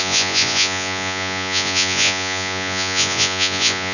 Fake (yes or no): yes